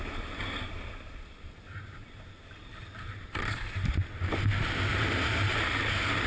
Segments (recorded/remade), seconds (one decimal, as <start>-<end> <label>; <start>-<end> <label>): 0.0-2.6 remade; 2.6-4.9 recorded; 4.9-5.6 remade; 5.6-6.3 recorded